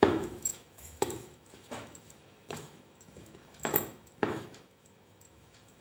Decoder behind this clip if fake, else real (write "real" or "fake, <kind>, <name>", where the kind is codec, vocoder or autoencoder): fake, autoencoder, DAC-VAE